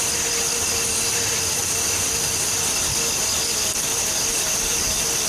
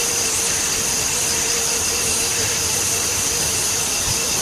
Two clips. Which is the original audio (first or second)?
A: first